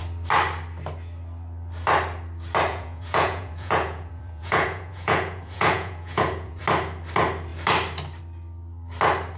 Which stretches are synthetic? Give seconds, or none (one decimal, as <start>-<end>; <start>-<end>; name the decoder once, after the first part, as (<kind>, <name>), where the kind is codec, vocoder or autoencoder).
2.7-6.6 (vocoder, Vocos)